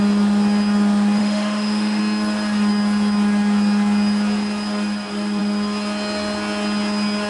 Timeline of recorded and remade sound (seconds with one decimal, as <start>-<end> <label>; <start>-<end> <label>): 0.0-1.2 recorded; 1.2-2.0 remade; 2.0-7.3 recorded